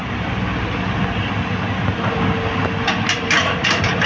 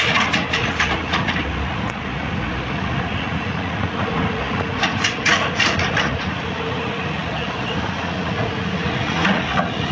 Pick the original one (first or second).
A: first